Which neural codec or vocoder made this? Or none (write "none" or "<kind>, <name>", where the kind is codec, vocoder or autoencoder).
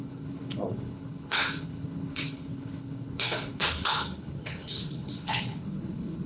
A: codec, HILCodec